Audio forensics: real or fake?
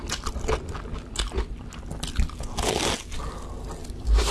real